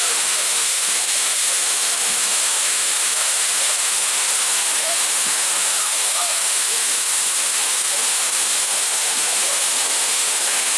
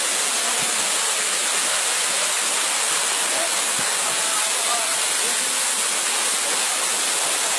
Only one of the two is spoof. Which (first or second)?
first